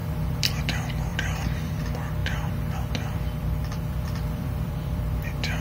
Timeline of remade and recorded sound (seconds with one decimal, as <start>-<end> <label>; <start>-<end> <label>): 0.0-0.5 remade; 0.5-1.1 recorded; 1.1-1.8 remade; 1.8-2.2 recorded; 2.2-5.6 remade